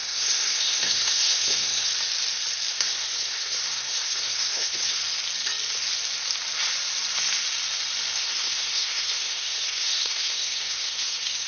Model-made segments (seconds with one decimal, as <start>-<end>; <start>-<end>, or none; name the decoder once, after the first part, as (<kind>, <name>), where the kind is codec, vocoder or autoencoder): 0.0-1.9 (codec, SNAC); 2.7-5.0; 8.2-11.5